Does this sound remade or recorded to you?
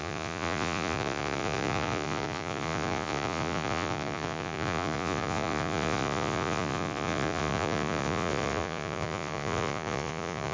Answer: remade